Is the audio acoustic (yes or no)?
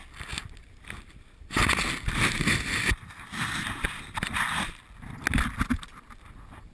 yes